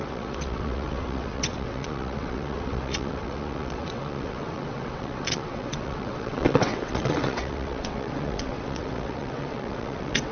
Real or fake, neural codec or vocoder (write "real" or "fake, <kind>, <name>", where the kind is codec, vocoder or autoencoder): fake, vocoder, WaveNeXt